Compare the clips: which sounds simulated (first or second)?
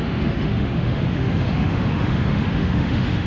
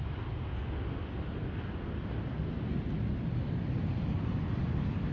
first